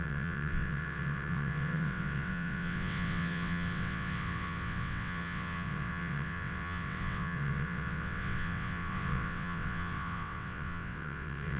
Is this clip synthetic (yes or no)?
yes